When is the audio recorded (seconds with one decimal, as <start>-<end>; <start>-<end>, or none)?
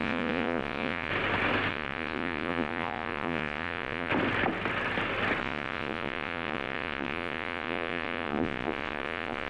1.1-1.7; 4.1-5.4